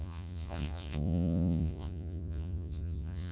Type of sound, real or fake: fake